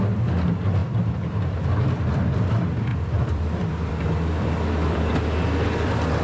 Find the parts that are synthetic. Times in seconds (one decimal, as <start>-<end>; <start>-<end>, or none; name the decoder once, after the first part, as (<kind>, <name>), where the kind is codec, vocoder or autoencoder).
2.9-5.1 (vocoder, BigVGAN v2)